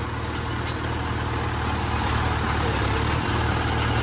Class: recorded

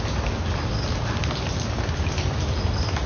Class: recorded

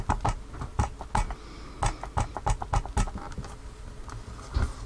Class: recorded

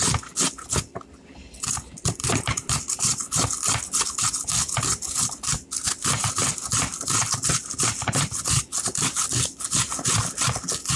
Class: recorded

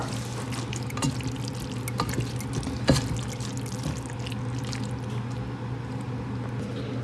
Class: recorded